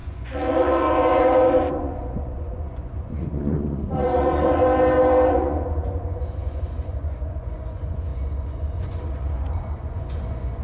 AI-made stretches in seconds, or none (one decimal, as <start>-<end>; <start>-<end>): 0.0-4.6; 5.3-10.6